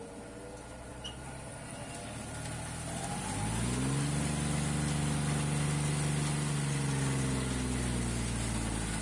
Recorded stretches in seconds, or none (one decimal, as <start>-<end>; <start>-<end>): 0.0-9.0